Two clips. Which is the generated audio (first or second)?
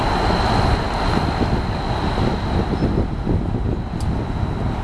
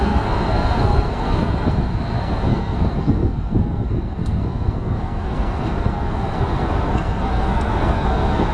second